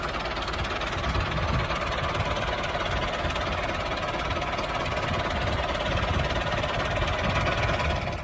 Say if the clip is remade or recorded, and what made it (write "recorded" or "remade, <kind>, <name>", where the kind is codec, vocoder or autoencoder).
recorded